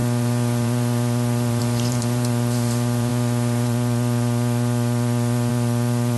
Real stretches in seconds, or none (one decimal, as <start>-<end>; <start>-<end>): none